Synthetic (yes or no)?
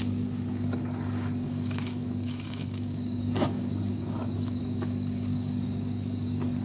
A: yes